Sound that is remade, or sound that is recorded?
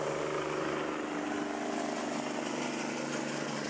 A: recorded